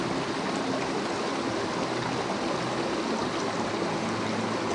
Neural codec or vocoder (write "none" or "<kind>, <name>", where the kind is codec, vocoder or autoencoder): none